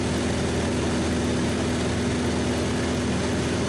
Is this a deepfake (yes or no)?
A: no